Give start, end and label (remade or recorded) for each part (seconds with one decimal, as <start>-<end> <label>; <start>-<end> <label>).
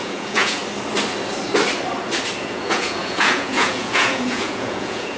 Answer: 0.0-0.6 remade; 0.6-2.5 recorded; 2.5-5.2 remade